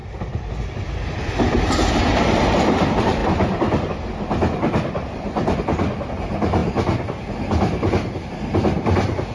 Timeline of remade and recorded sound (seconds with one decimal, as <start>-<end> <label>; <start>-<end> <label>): 0.0-0.9 remade; 0.9-3.2 recorded; 3.2-3.9 remade; 3.9-9.3 recorded